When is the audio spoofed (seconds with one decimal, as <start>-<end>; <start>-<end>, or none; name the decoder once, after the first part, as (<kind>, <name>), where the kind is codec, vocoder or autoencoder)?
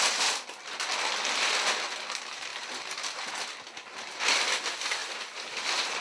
2.5-3.3 (vocoder, BigVGAN v2); 5.0-6.0